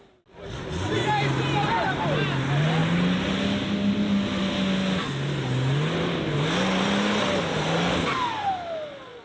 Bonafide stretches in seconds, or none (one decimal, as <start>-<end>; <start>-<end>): 0.0-9.2